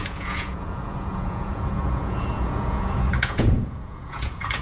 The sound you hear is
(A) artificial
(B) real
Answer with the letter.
A